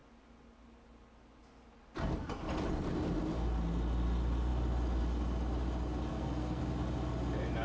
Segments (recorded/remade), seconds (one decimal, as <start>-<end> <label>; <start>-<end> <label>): 0.0-6.1 recorded; 6.1-6.6 remade; 6.6-7.6 recorded